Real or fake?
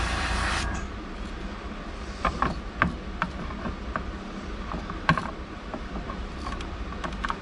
fake